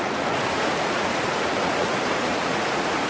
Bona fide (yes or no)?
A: no